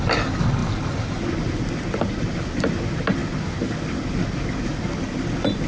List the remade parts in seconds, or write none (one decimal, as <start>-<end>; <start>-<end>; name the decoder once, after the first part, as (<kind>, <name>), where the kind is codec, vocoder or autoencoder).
none